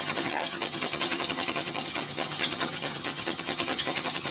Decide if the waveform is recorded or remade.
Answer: remade